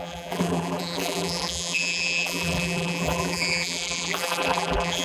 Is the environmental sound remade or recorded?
remade